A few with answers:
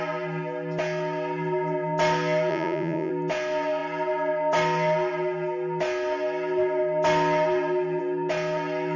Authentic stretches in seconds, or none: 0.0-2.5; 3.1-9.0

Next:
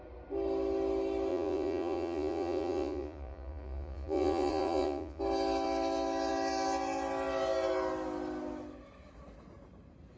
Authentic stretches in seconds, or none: 0.0-1.3; 5.2-10.2

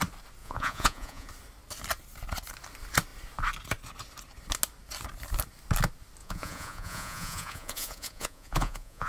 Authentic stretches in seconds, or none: 0.0-0.4; 1.3-6.2

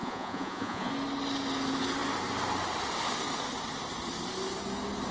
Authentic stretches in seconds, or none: 0.9-5.1

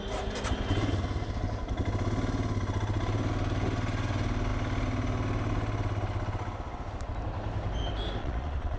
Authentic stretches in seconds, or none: 0.0-8.2